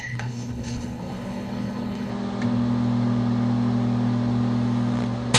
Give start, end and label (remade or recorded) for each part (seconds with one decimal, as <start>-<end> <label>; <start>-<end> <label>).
0.0-2.1 remade; 2.1-5.4 recorded